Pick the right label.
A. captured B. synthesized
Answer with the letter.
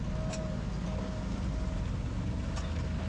A